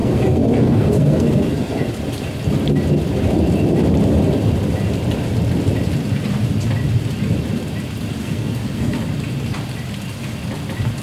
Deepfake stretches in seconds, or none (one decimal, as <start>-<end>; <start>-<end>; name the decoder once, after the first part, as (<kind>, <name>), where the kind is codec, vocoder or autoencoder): 0.0-1.9 (codec, SNAC); 8.2-9.0